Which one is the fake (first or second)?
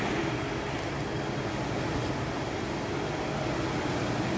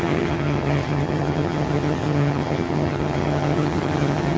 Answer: second